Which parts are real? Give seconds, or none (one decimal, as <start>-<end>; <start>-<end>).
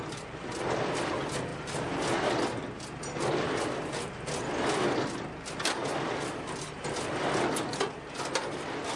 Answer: 0.0-9.0